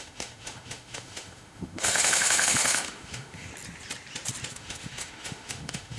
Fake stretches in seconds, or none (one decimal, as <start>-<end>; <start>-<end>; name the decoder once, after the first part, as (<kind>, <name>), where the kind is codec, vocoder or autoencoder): 0.0-3.5 (autoencoder, DAC-VAE); 4.5-6.0